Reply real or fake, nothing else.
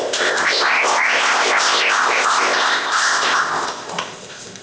fake